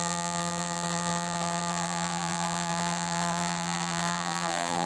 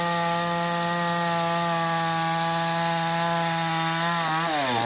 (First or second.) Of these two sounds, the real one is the second